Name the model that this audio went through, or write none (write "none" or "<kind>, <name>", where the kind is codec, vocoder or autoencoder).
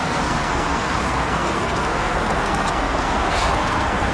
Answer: codec, SNAC